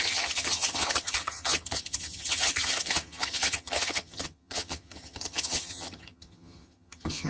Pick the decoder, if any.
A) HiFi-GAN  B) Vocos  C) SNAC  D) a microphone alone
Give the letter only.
A